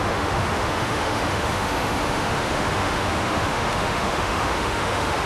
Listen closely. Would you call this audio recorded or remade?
remade